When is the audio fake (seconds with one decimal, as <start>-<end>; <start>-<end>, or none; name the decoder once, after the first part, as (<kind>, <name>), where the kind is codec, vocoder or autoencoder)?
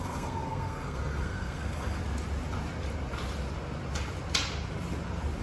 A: 0.0-2.0 (codec, SNAC)